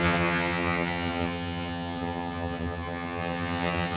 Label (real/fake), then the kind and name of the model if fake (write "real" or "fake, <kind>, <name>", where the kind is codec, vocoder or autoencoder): fake, vocoder, HiFi-GAN